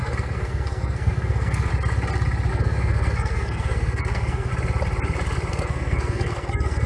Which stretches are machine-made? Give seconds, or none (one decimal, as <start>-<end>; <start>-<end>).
0.0-1.7; 2.5-4.5; 5.5-6.9